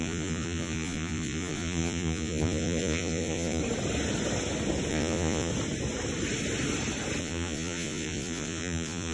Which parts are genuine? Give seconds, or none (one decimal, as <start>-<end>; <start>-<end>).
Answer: 3.6-4.9; 5.5-7.2